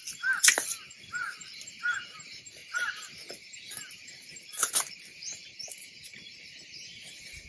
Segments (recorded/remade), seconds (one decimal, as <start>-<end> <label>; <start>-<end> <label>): 0.0-1.1 recorded; 1.1-2.6 remade; 2.6-3.3 recorded; 3.3-7.5 remade